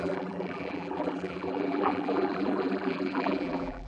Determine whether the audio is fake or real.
fake